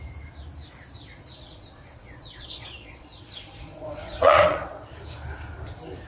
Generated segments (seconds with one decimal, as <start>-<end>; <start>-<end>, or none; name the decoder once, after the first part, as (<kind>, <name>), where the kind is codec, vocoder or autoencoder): 1.1-4.8 (vocoder, Vocos)